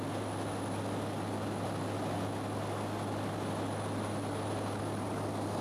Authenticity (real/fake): real